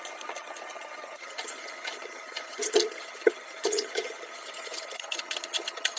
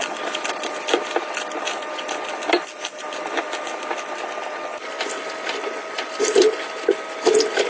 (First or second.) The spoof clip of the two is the first